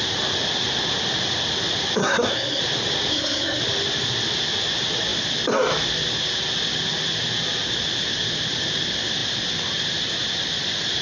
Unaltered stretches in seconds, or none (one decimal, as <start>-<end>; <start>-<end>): 0.0-2.0; 2.6-3.1; 3.6-11.0